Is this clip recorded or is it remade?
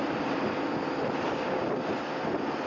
recorded